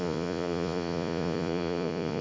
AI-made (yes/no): yes